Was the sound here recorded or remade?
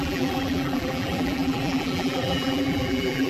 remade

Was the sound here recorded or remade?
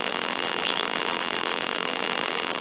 remade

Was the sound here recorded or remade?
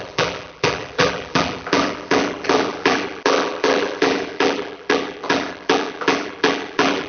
remade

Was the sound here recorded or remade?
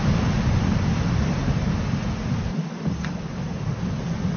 recorded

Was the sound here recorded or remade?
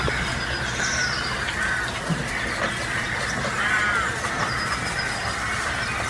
recorded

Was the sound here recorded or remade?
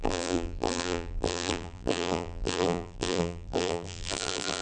remade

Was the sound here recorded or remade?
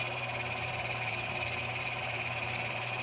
remade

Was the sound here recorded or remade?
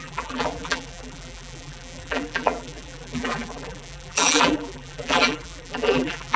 remade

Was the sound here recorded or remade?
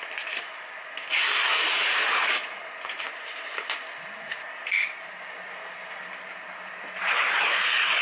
remade